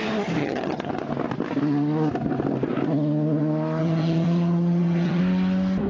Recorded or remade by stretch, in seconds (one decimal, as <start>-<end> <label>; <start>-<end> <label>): 0.0-0.4 recorded; 0.4-0.9 remade; 0.9-3.8 recorded; 3.8-5.2 remade; 5.2-5.9 recorded